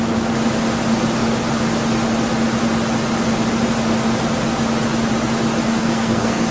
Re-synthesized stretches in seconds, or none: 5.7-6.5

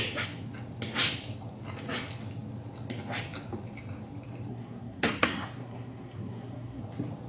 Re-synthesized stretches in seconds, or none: 4.5-6.8

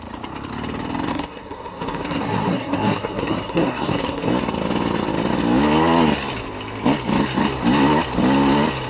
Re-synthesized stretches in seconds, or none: 1.1-4.3